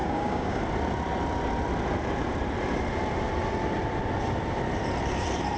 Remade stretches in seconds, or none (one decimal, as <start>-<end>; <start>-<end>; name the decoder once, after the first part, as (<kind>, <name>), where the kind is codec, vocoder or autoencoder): 0.0-0.6 (codec, DAC)